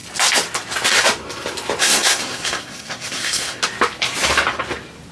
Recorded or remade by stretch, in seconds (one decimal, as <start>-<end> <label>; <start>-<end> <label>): 0.0-1.8 recorded; 1.8-3.6 remade; 3.6-5.1 recorded

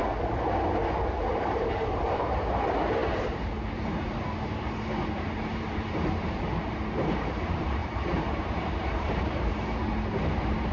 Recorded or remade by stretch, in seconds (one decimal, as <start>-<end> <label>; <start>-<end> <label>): 0.0-1.3 recorded; 1.3-10.7 remade

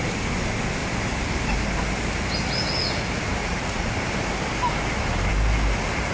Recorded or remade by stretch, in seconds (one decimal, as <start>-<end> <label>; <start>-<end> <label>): 0.0-3.4 recorded; 3.4-3.9 remade; 3.9-6.1 recorded

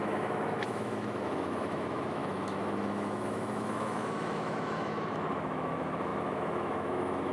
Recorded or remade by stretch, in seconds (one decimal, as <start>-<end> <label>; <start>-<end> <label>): 0.0-7.3 remade

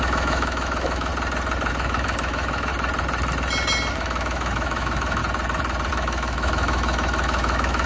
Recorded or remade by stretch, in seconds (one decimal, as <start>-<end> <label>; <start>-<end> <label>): 0.0-1.1 remade; 1.1-1.7 recorded; 1.7-2.7 remade; 2.7-3.9 recorded; 3.9-5.2 remade; 5.2-5.9 recorded; 5.9-7.9 remade

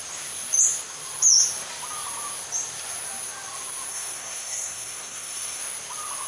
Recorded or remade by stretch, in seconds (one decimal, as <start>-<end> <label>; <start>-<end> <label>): 0.0-3.9 recorded; 3.9-5.6 remade; 5.6-6.3 recorded

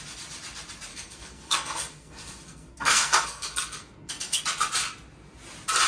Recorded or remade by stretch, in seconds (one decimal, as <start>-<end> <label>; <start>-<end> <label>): 0.0-0.9 recorded; 0.9-4.4 remade; 4.4-5.9 recorded

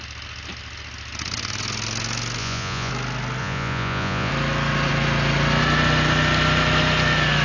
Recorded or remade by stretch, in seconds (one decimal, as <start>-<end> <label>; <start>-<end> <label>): 0.0-2.4 recorded; 2.4-2.9 remade; 2.9-3.4 recorded; 3.4-4.3 remade; 4.3-7.4 recorded